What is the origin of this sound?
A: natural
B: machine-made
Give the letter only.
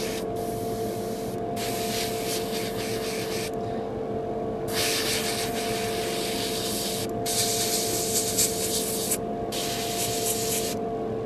A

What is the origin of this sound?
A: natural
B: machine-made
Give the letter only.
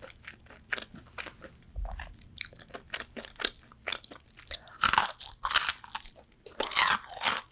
A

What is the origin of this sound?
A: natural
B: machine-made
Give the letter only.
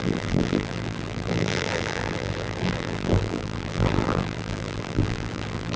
B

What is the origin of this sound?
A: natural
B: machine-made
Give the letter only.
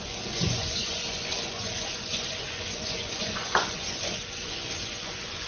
B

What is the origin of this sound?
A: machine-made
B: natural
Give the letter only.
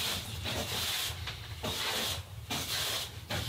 B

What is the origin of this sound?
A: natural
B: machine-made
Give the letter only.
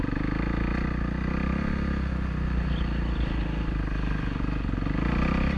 A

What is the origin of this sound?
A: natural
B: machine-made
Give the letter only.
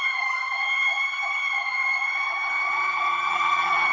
B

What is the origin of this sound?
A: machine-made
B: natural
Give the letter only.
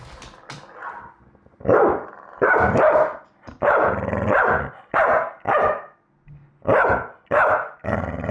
B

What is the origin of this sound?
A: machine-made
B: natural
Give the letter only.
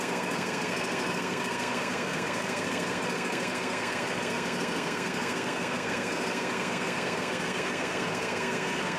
A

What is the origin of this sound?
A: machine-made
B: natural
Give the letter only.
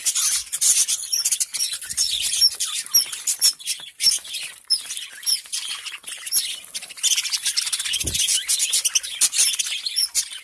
B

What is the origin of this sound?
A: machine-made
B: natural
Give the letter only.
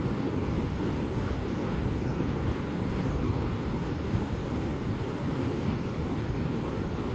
A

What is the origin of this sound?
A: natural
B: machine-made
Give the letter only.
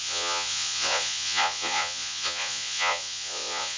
B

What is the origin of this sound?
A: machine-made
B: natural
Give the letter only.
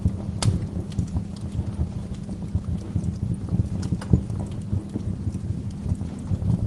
B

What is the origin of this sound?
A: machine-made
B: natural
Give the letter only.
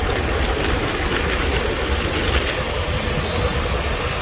B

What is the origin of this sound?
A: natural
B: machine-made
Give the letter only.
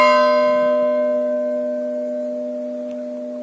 A